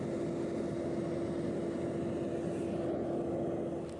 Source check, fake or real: real